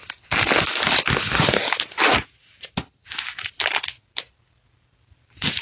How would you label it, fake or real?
real